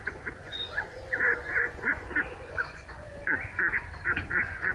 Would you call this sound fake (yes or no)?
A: yes